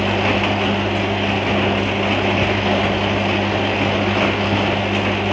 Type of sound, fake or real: real